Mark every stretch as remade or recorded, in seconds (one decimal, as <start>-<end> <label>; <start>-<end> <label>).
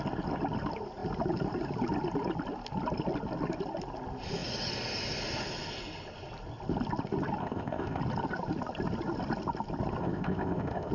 0.0-7.4 recorded; 7.4-8.0 remade; 8.0-10.0 recorded; 10.0-10.9 remade